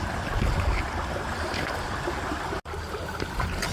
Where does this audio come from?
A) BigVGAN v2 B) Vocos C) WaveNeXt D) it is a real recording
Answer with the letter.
D